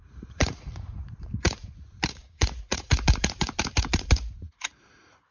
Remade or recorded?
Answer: remade